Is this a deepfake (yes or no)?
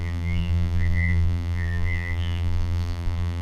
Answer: yes